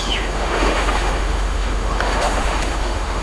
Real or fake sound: fake